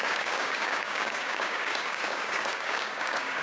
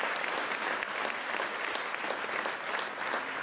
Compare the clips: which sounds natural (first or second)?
second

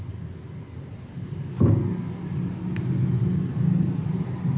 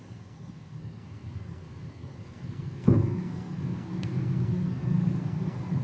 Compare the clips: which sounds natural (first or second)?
first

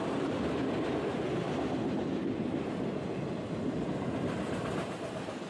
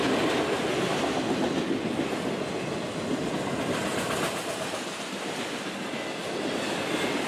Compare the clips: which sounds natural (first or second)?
second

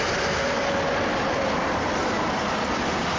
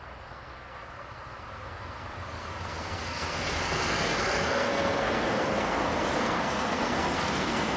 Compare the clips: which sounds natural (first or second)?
first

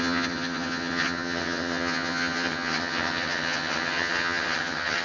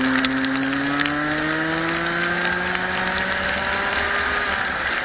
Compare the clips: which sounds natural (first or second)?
second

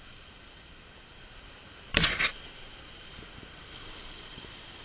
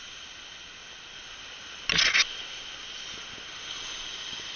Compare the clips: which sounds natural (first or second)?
second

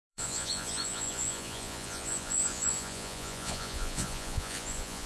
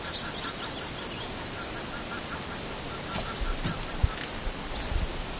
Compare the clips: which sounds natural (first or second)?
second